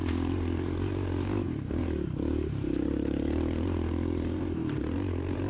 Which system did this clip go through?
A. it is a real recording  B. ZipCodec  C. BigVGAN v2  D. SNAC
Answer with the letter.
C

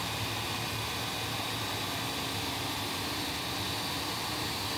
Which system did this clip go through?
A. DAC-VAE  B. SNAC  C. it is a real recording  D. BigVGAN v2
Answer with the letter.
C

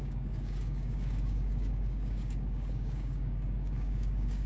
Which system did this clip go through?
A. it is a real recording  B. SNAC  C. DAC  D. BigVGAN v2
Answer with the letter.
C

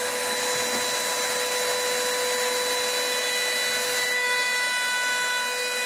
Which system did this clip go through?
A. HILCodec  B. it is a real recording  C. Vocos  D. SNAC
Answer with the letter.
B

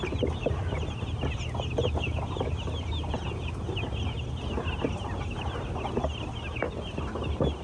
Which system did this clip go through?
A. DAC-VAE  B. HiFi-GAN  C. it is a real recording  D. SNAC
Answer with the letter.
C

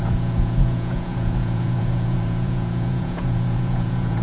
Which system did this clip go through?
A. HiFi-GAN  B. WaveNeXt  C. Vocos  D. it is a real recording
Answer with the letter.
C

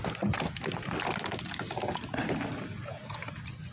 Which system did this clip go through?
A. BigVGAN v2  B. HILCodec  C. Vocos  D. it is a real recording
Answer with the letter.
D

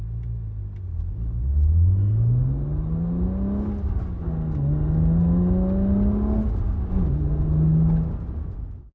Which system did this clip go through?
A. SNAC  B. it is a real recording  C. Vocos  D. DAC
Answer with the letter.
B